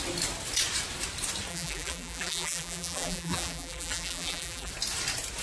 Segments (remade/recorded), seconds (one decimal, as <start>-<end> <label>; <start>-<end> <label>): 0.0-1.5 recorded; 1.5-4.7 remade; 4.7-5.4 recorded